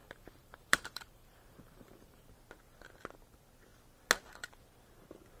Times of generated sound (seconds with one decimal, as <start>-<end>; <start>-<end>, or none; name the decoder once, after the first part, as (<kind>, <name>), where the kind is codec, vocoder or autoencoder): 0.0-2.3 (vocoder, BigVGAN v2)